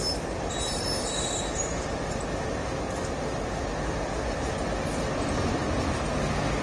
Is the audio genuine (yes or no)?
yes